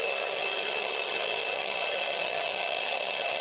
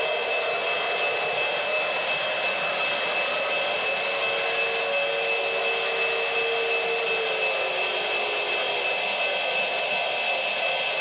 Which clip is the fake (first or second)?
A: first